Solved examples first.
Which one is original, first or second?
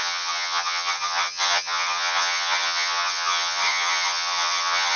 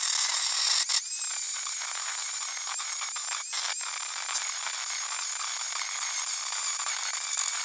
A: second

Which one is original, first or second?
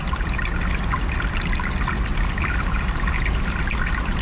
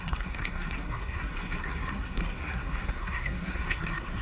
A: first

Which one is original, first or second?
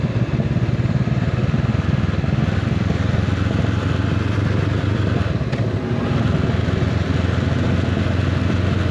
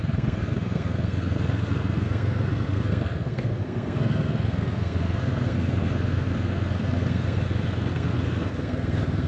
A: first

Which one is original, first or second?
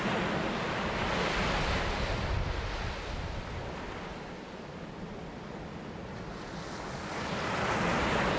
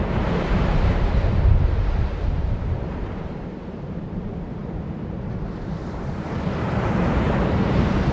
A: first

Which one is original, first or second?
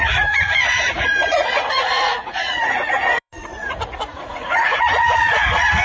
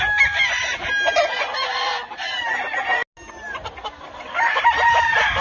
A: second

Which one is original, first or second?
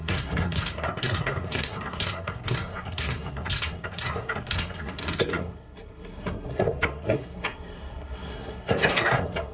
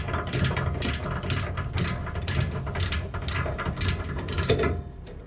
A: second